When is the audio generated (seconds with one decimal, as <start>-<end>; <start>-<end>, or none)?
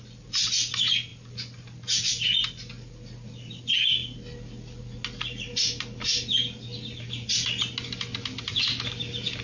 none